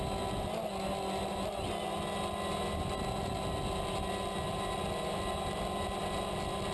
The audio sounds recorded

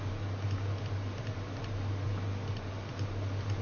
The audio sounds recorded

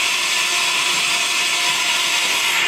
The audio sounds recorded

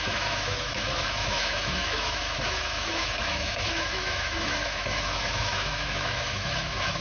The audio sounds remade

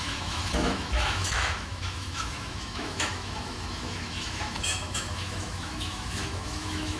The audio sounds remade